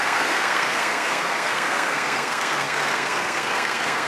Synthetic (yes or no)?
yes